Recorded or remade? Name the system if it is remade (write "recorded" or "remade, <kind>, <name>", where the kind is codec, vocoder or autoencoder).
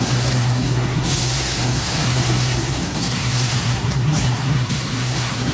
remade, codec, SNAC